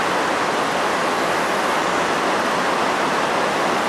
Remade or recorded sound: recorded